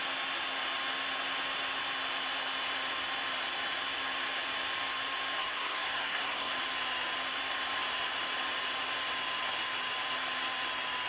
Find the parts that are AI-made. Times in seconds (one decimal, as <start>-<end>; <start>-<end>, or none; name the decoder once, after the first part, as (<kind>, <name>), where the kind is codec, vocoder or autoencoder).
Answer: 5.4-6.5 (codec, SNAC)